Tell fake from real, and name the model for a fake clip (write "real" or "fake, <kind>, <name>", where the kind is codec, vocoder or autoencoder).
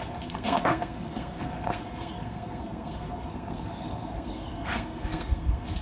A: fake, codec, SNAC